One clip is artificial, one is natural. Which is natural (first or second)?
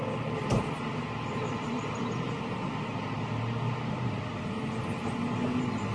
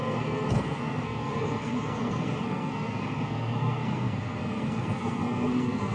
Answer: first